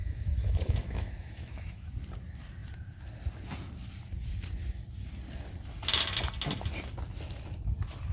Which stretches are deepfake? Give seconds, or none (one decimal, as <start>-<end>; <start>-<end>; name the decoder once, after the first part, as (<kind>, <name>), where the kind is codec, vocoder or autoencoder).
0.0-1.9 (autoencoder, DAC-VAE)